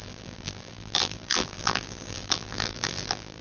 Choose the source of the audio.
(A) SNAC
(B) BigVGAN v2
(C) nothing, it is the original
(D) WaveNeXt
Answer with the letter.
B